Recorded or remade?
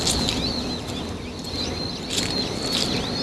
recorded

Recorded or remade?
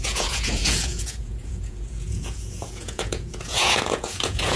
remade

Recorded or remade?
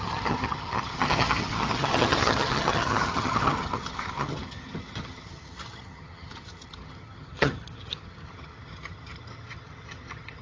remade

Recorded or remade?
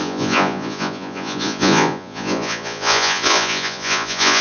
remade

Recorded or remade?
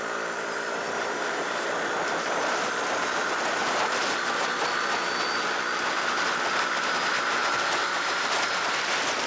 recorded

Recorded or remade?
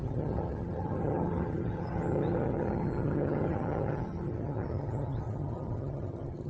remade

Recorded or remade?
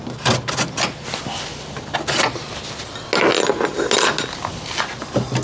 recorded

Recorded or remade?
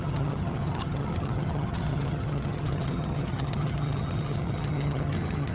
remade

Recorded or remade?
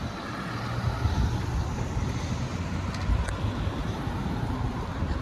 recorded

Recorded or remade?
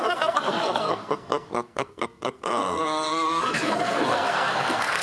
remade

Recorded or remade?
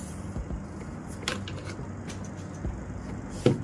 recorded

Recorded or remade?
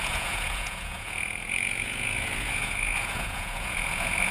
remade